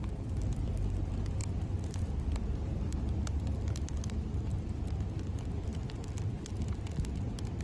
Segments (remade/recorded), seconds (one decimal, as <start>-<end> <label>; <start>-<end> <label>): 0.0-1.4 recorded; 1.4-3.2 remade; 3.2-7.6 recorded

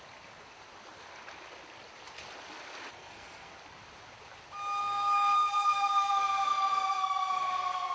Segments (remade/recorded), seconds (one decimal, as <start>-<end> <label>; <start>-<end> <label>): 0.0-2.9 recorded; 2.9-3.5 remade; 3.5-4.8 recorded; 4.8-7.9 remade

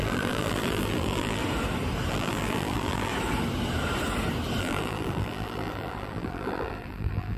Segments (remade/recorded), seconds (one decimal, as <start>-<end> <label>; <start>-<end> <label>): 0.0-1.4 remade; 1.4-2.1 recorded; 2.1-3.1 remade; 3.1-4.6 recorded; 4.6-7.4 remade

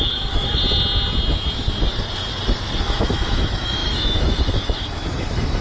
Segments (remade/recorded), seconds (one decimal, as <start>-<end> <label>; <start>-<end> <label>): 0.0-0.6 remade; 0.6-2.8 recorded; 2.8-5.6 remade

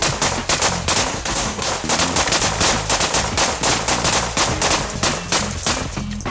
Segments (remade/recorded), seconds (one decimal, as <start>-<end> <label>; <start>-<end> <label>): 0.0-1.1 recorded; 1.1-1.7 remade; 1.7-6.3 recorded

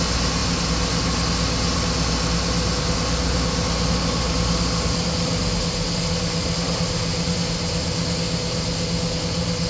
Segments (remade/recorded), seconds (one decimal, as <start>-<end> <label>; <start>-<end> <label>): 0.0-9.7 recorded